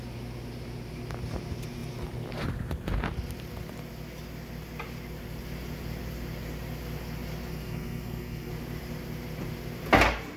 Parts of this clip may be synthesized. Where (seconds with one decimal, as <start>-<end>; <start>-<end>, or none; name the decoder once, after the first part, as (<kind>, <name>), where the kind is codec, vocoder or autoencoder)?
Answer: 7.5-8.5 (codec, SNAC)